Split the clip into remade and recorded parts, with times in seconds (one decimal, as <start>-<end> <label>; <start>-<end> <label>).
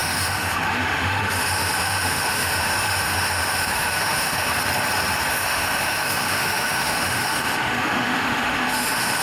0.0-4.5 remade; 4.5-5.3 recorded; 5.3-9.2 remade